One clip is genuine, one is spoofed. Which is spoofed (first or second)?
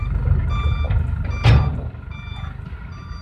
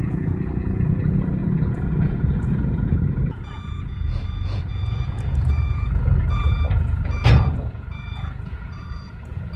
second